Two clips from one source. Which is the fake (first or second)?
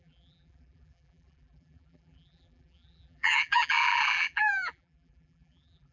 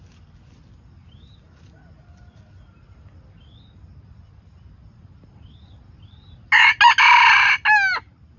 first